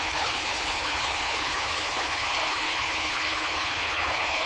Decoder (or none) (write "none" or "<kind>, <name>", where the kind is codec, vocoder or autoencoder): codec, HILCodec